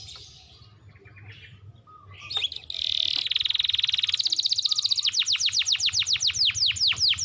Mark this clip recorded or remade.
recorded